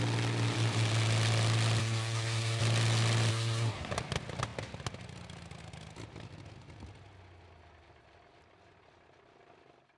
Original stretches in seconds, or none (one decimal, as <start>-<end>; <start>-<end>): 0.0-1.8; 2.6-3.3; 3.9-10.0